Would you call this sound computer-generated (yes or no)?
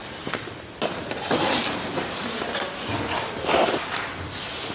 no